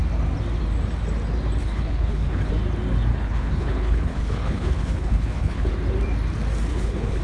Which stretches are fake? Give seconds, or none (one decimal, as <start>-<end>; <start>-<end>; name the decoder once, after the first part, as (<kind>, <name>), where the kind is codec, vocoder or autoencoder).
1.6-2.5 (codec, HILCodec); 3.1-5.7; 6.7-7.2